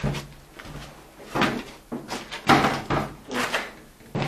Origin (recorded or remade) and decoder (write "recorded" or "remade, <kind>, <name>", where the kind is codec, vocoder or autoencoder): recorded